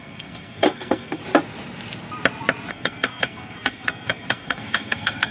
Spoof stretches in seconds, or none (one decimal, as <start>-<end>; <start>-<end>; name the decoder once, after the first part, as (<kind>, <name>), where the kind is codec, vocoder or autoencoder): 0.0-1.2 (codec, SNAC); 2.7-5.3